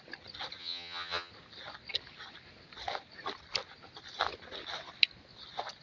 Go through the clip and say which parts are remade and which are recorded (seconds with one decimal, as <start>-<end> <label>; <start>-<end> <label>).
0.0-0.6 recorded; 0.6-1.3 remade; 1.3-5.8 recorded